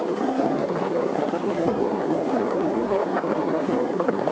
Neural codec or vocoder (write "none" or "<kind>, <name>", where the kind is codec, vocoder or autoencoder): codec, SNAC